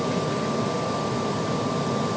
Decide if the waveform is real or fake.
real